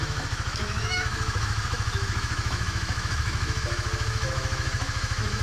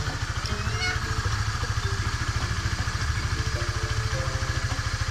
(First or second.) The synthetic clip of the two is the first